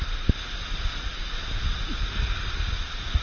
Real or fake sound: real